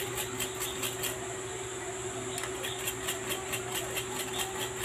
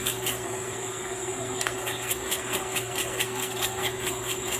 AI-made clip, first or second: second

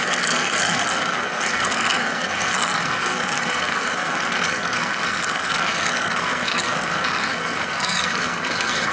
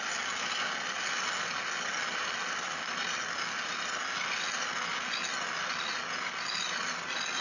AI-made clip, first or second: first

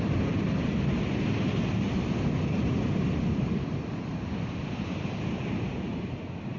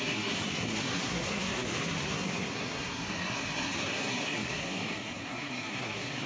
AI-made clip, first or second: second